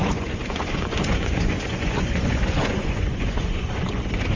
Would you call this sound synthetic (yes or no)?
yes